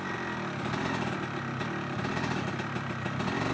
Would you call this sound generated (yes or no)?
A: no